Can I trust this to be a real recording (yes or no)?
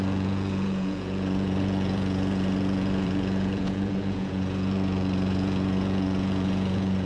no